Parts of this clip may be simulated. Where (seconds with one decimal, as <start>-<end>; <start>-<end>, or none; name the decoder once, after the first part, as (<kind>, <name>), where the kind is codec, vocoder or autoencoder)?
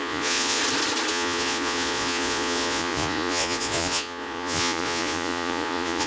0.0-0.6 (vocoder, Vocos); 1.1-6.1